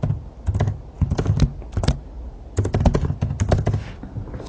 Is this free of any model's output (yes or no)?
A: yes